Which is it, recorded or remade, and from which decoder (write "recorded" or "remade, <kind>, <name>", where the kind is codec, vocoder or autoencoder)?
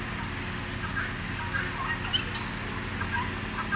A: recorded